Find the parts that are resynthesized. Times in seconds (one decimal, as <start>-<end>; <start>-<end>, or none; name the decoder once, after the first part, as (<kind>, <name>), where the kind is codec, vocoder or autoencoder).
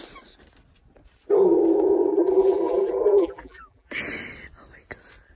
2.1-3.9 (vocoder, BigVGAN v2)